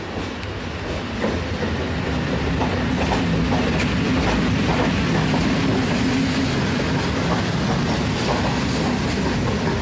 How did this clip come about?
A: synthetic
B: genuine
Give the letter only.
B